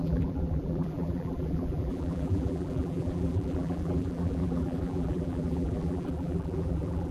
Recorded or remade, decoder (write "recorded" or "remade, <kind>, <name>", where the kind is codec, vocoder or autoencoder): remade, vocoder, BigVGAN v2